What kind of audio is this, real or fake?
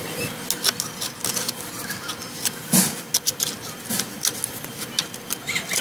real